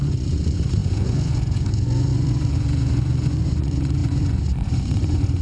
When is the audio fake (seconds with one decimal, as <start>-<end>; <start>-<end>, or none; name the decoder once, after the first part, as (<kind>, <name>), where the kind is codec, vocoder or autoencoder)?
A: 0.0-5.4 (vocoder, Vocos)